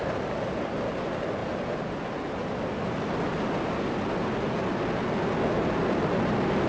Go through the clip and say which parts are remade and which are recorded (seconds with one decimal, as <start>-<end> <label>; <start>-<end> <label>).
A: 0.0-6.7 recorded